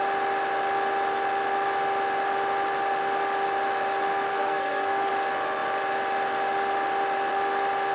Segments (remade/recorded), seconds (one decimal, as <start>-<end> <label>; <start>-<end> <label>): 0.0-4.3 recorded; 4.3-5.1 remade; 5.1-7.9 recorded